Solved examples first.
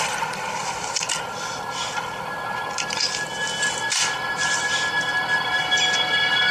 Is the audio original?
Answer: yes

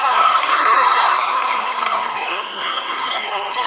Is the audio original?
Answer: no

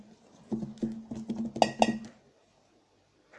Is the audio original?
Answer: yes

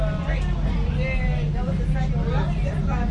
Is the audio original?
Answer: yes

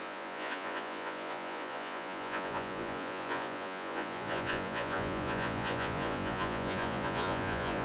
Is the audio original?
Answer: no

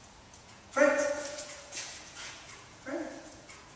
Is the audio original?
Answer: no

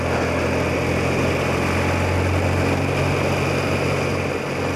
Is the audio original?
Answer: yes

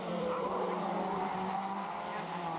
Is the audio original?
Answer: no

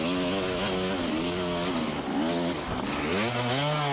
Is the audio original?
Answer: yes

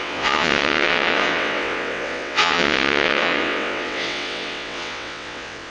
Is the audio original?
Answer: no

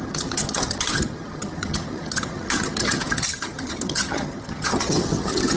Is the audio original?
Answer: no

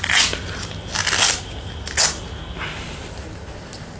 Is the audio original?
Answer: yes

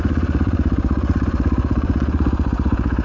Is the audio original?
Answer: no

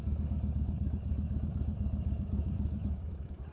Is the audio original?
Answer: no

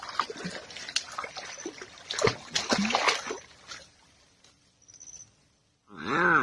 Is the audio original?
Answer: yes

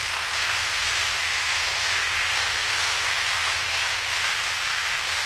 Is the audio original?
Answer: no